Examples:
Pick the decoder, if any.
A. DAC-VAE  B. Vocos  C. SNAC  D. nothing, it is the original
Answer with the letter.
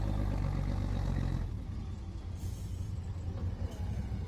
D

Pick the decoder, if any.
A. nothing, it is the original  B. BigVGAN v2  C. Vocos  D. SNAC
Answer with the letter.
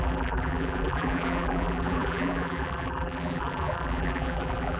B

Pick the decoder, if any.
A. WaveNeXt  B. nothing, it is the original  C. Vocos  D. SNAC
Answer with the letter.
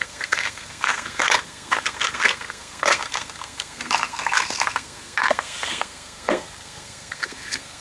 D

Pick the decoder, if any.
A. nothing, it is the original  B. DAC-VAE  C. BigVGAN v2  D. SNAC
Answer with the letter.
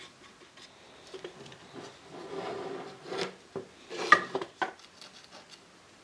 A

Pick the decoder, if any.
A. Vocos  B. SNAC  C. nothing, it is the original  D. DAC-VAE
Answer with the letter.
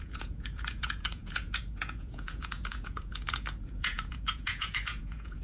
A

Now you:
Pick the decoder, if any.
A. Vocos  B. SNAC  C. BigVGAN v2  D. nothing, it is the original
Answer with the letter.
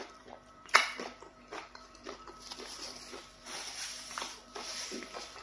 C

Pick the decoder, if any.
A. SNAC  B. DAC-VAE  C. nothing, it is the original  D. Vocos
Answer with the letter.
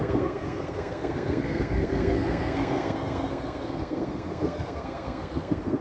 A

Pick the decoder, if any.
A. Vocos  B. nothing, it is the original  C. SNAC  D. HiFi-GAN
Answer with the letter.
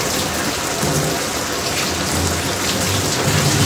B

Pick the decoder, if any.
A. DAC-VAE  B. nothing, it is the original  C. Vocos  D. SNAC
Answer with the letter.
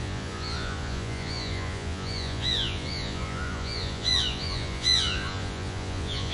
C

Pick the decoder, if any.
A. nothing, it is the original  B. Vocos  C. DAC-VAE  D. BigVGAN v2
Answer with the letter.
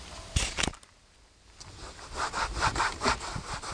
A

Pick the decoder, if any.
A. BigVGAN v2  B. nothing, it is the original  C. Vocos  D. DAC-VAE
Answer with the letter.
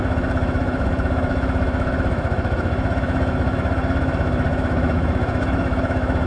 D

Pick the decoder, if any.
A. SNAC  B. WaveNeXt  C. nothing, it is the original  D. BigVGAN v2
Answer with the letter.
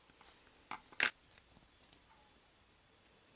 C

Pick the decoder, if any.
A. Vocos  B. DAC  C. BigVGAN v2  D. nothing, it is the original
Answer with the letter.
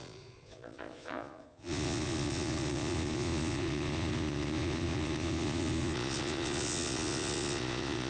A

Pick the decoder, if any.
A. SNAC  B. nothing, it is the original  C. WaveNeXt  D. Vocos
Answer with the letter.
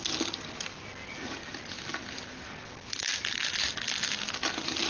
B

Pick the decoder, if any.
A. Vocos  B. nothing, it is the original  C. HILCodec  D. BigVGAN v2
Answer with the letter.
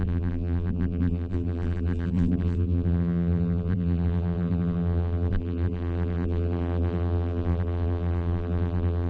D